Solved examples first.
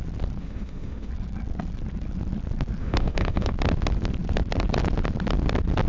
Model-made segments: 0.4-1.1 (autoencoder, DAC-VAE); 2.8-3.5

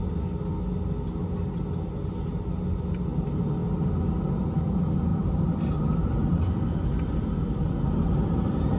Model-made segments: 5.1-7.4 (vocoder, BigVGAN v2)

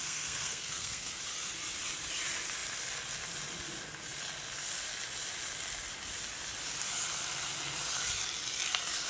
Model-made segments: 0.0-1.2 (codec, SNAC)

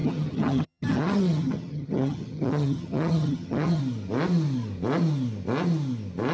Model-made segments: 0.0-3.8 (vocoder, HiFi-GAN)